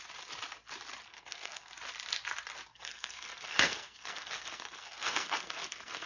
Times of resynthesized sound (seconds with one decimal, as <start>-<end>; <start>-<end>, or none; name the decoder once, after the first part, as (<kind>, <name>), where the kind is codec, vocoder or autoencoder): 1.1-1.7 (codec, SNAC); 2.7-6.1